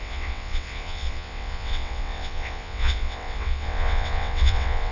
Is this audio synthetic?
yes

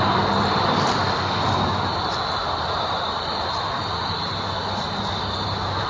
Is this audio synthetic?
no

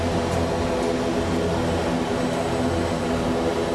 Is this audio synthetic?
no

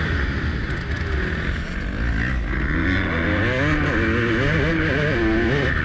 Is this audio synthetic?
no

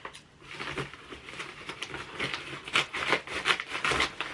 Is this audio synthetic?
no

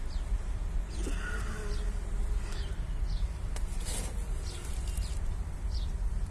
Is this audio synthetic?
no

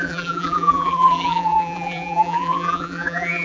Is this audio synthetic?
yes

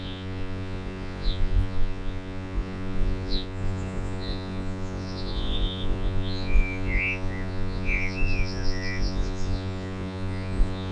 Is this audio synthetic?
yes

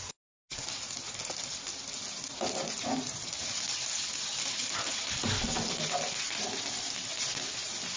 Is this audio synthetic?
no